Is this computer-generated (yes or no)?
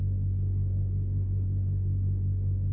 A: no